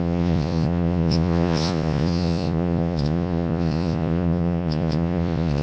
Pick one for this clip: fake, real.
fake